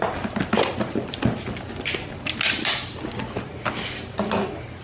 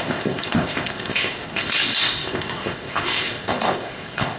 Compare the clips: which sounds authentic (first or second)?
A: first